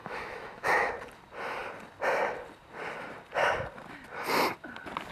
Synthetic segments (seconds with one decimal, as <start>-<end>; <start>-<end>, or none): 0.0-0.9